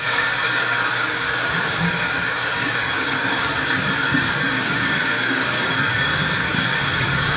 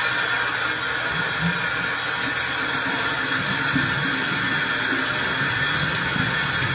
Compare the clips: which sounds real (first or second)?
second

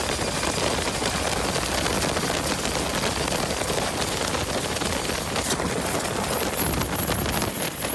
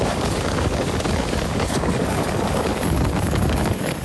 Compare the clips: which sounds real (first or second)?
first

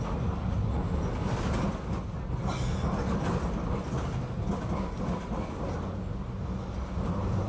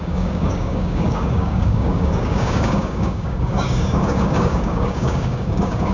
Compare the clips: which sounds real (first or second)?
first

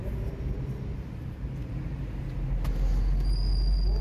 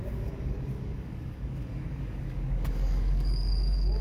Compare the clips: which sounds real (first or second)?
first